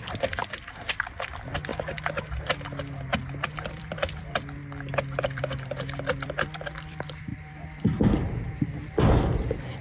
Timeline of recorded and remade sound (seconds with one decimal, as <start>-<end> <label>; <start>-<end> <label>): 0.0-1.7 remade; 1.7-3.7 recorded; 3.7-4.6 remade; 4.6-5.2 recorded; 5.2-9.8 remade